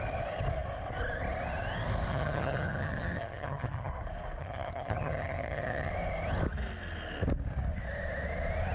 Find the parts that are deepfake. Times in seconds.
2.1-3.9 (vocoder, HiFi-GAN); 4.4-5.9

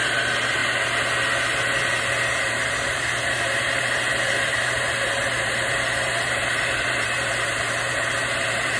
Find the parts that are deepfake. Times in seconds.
0.0-0.6 (vocoder, BigVGAN v2); 2.4-8.8

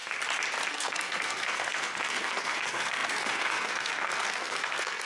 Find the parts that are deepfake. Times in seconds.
0.7-5.1 (codec, SNAC)

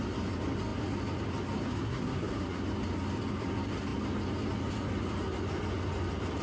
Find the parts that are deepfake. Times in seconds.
1.7-2.6 (codec, SNAC)

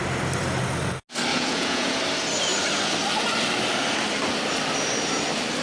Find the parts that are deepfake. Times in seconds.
1.3-2.0 (vocoder, Vocos)

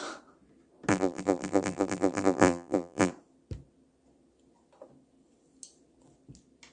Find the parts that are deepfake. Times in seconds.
0.9-3.1 (vocoder, BigVGAN v2)

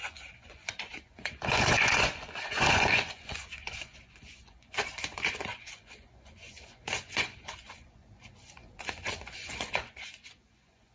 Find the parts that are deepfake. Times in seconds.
0.0-10.9 (vocoder, Vocos)